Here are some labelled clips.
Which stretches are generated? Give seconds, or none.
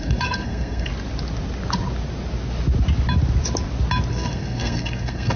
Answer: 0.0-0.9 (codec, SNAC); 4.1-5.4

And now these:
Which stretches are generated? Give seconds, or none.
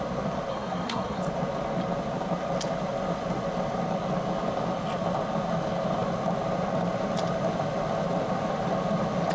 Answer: 0.5-1.2 (codec, SNAC)